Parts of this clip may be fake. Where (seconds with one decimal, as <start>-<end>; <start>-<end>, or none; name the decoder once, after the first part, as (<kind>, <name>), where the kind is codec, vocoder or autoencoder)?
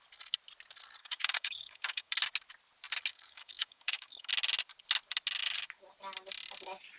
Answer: 1.0-2.1 (codec, DAC); 3.1-4.3